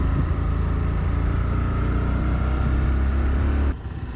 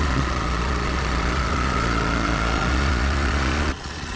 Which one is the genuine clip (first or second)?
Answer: first